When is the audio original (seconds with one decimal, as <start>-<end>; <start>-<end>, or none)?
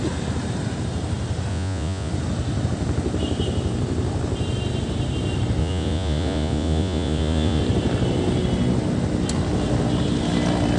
0.0-1.5; 2.1-5.6; 7.6-10.8